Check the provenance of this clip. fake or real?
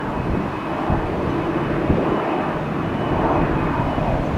real